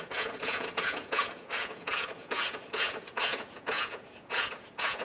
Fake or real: fake